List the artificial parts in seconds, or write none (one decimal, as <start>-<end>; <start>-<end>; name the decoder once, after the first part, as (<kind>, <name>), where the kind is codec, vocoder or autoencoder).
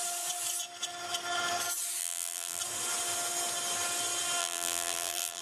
2.0-2.6 (vocoder, BigVGAN v2); 4.4-5.4